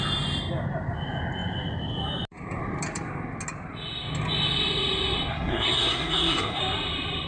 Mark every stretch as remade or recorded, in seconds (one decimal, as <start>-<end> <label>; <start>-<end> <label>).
0.0-5.3 recorded; 5.3-6.6 remade; 6.6-7.3 recorded